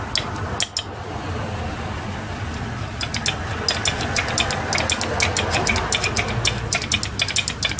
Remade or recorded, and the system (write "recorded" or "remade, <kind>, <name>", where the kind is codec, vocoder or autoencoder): recorded